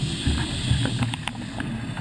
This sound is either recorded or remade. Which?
recorded